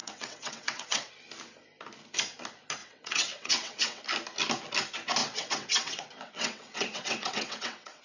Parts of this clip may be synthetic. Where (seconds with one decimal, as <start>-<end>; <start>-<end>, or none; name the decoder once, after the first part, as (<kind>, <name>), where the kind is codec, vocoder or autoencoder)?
0.0-1.1 (vocoder, WaveNeXt); 2.8-4.0; 5.2-8.0